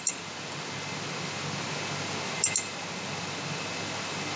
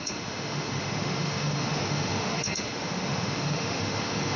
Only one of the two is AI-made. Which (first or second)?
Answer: second